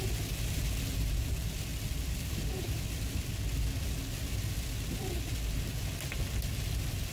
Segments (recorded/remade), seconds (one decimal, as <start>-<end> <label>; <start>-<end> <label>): 0.0-7.1 recorded